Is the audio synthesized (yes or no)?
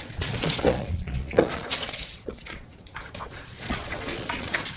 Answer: yes